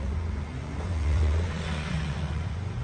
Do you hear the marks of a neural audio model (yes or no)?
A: yes